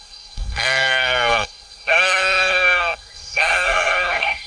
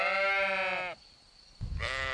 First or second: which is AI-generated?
first